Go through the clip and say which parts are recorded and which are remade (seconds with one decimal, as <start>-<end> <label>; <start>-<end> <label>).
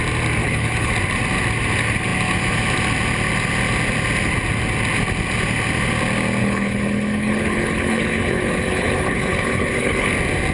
0.0-0.4 recorded; 0.4-0.9 remade; 0.9-6.4 recorded; 6.4-10.1 remade; 10.1-10.5 recorded